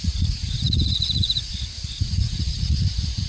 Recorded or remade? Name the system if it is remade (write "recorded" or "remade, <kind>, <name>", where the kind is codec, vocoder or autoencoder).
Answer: remade, vocoder, Vocos